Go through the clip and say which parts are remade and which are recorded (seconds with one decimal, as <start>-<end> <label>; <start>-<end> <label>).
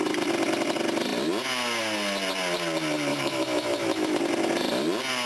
0.0-3.1 recorded; 3.1-4.2 remade; 4.2-5.3 recorded